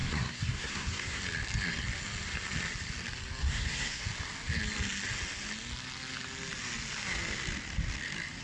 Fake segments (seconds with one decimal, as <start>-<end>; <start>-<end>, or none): 0.0-1.2; 3.4-4.0